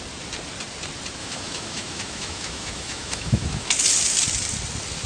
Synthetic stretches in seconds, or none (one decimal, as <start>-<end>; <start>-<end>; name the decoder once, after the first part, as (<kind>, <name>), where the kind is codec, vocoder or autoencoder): 1.2-3.7 (autoencoder, DAC-VAE)